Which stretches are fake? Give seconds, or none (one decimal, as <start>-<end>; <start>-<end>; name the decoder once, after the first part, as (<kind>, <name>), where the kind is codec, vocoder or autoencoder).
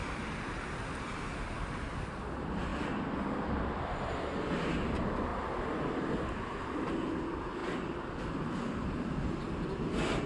none